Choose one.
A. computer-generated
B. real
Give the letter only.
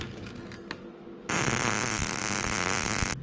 B